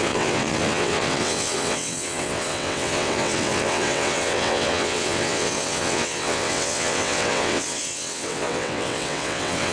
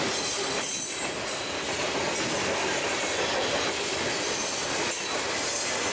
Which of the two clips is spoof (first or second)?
first